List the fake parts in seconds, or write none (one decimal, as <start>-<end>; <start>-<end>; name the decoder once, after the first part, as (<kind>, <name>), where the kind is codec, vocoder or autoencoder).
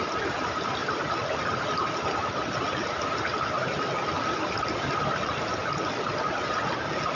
none